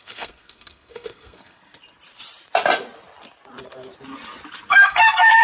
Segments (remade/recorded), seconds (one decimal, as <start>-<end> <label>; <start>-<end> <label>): 0.0-1.6 remade; 1.6-4.7 recorded; 4.7-5.4 remade